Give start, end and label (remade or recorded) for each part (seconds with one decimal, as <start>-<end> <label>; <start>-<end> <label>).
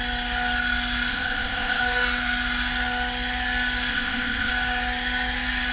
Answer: 0.0-1.1 recorded; 1.1-1.8 remade; 1.8-3.9 recorded; 3.9-4.5 remade; 4.5-5.7 recorded